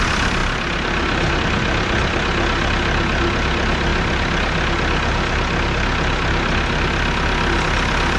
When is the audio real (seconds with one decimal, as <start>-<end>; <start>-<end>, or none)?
0.0-8.2